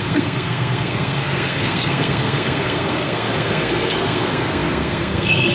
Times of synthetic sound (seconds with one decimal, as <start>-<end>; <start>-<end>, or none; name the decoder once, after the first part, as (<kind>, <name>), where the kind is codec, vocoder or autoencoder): 0.0-5.5 (codec, SNAC)